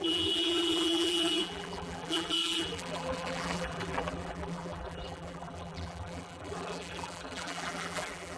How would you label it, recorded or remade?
remade